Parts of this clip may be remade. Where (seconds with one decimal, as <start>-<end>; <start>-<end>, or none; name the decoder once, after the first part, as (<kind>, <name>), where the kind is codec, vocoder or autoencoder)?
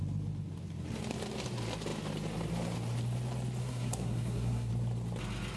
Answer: 3.6-4.7 (codec, SNAC)